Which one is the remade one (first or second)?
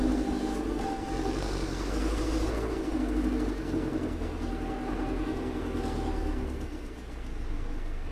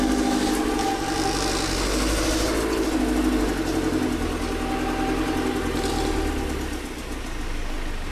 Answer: first